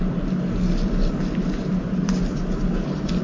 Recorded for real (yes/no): yes